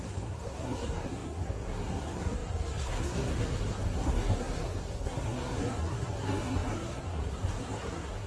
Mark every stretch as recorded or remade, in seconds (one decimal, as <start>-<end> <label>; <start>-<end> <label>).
0.0-8.3 remade